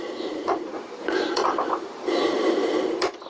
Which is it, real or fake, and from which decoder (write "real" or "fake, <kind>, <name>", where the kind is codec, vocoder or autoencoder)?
fake, vocoder, BigVGAN v2